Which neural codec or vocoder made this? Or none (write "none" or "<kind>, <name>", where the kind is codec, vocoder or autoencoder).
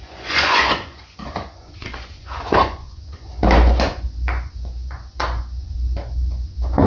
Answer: vocoder, Vocos